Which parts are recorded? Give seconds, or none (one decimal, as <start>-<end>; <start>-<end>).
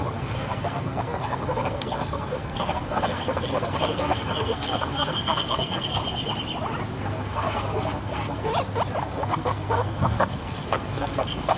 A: 6.0-7.0; 8.5-9.0